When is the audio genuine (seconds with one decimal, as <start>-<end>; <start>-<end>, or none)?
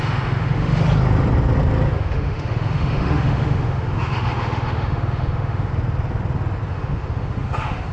0.8-1.9; 5.7-6.7